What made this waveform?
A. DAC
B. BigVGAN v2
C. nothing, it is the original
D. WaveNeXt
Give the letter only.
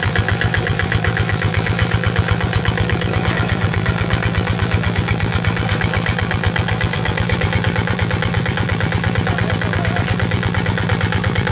B